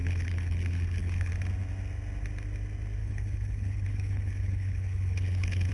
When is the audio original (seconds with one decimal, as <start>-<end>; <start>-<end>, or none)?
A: 1.3-3.0